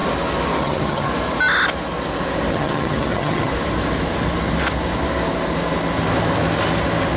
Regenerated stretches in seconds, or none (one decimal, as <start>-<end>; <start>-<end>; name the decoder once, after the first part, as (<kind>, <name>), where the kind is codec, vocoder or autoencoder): 0.6-1.1 (vocoder, HiFi-GAN); 2.5-3.5